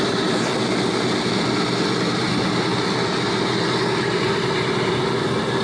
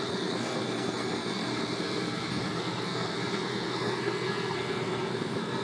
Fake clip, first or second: second